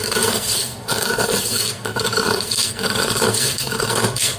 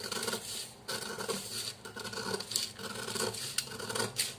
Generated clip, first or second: first